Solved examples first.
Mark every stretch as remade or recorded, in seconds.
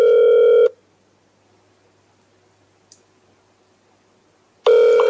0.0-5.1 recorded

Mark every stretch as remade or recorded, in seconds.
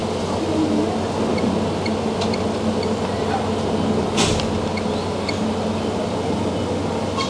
0.0-7.3 recorded